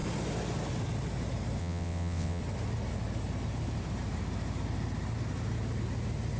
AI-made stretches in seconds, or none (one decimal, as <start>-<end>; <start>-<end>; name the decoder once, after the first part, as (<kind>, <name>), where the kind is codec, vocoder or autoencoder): 1.6-2.4 (vocoder, WaveNeXt)